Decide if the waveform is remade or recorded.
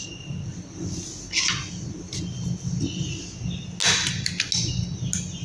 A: recorded